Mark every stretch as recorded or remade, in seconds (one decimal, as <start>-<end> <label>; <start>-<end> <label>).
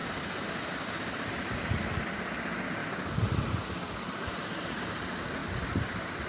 0.0-6.3 recorded